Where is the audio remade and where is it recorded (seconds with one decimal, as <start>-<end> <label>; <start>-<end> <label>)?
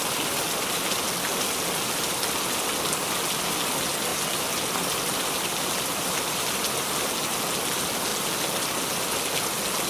0.0-2.0 remade; 2.0-4.1 recorded; 4.1-6.9 remade; 6.9-9.9 recorded